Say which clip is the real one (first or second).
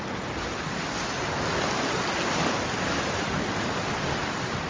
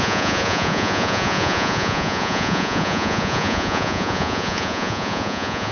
first